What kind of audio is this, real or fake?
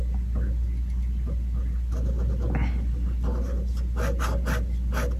real